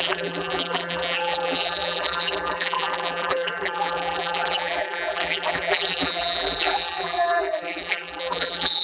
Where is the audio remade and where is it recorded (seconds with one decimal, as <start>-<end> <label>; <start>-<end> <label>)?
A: 0.0-8.8 remade